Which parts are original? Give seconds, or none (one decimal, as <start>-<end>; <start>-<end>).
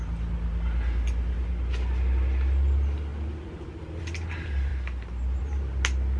0.0-6.2